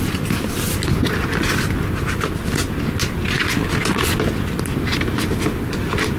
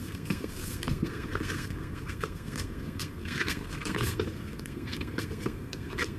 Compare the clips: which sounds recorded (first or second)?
first